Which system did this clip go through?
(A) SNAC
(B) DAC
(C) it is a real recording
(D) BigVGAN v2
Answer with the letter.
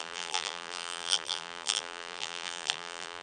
D